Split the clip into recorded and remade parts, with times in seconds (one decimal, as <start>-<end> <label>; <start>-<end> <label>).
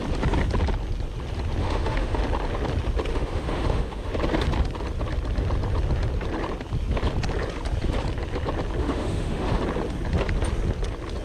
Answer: 0.0-1.6 recorded; 1.6-2.2 remade; 2.2-3.1 recorded; 3.1-4.1 remade; 4.1-8.8 recorded; 8.8-9.6 remade; 9.6-11.2 recorded